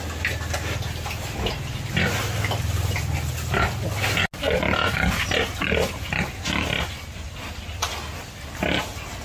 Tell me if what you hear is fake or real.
real